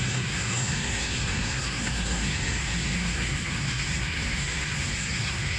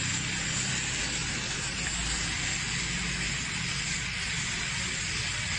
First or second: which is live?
second